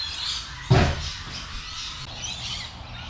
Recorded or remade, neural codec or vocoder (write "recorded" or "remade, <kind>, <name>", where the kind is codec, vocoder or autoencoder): recorded